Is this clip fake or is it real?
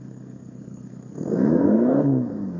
fake